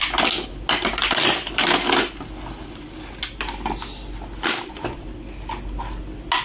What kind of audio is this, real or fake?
real